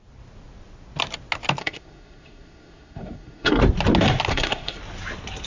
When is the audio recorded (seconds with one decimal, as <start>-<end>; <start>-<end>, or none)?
0.0-1.6; 3.6-4.3; 4.8-5.5